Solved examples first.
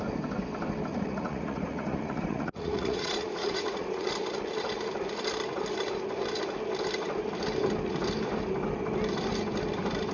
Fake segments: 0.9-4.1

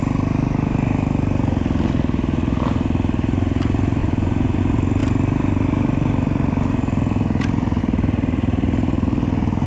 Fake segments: 4.0-4.6